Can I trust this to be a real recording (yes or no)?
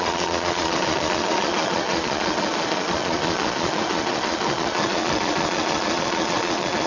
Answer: no